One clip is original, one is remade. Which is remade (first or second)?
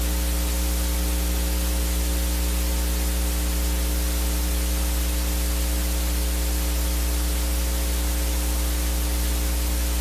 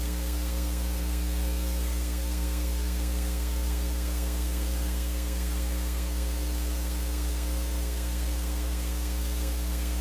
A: second